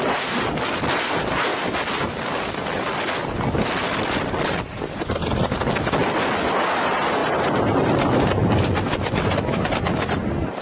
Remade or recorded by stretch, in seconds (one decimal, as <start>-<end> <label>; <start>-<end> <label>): 0.0-10.6 recorded